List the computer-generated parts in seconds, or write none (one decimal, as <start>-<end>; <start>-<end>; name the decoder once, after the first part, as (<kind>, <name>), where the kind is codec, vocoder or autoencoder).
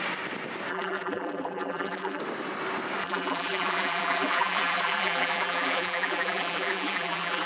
0.7-2.2 (vocoder, BigVGAN v2); 3.0-7.5